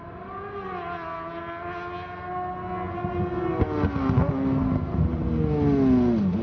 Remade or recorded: recorded